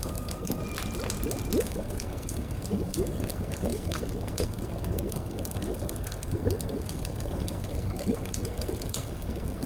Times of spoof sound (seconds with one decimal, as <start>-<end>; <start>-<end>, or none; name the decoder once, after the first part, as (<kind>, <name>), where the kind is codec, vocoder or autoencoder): 0.0-0.6 (codec, SNAC); 1.6-9.7